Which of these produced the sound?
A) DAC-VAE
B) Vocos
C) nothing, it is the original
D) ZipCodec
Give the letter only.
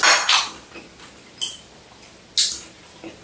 C